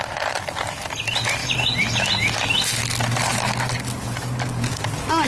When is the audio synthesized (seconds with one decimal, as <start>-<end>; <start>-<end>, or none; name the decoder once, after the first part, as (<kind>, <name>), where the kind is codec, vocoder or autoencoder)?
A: none